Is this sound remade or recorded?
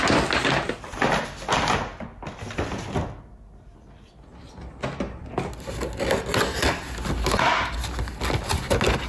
recorded